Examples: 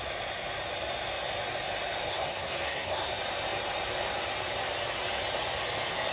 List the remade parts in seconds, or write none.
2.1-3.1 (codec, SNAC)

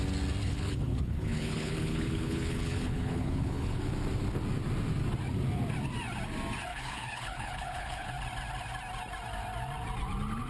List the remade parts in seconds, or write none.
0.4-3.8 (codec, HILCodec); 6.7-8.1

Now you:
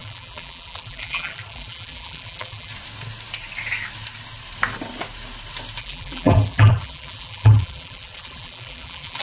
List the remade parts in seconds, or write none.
0.0-2.7 (vocoder, BigVGAN v2); 5.8-9.2

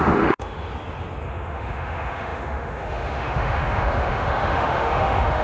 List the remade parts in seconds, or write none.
0.0-0.7 (autoencoder, DAC-VAE); 1.3-5.4

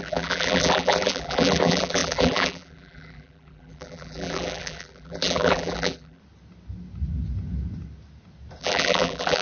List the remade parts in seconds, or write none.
0.0-6.2 (vocoder, BigVGAN v2); 8.6-9.4

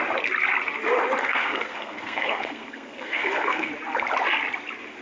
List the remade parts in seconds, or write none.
1.2-3.7 (codec, SNAC)

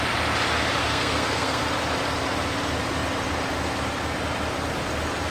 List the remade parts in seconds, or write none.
0.8-1.6 (codec, SNAC)